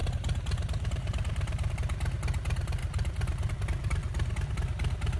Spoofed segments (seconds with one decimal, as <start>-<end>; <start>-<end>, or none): 0.0-1.7; 2.8-3.5; 4.0-4.5